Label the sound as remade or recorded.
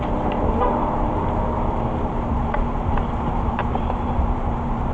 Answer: remade